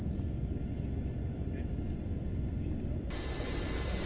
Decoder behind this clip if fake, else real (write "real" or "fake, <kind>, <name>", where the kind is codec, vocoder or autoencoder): real